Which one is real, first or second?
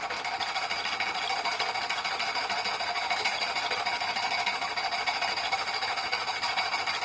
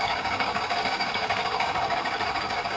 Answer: first